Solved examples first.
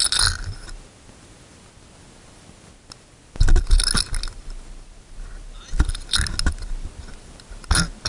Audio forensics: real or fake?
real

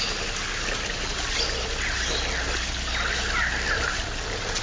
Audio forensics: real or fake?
real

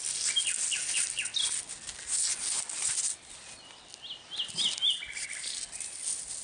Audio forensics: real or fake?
real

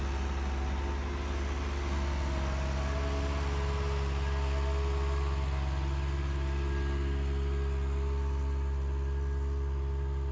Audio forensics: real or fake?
real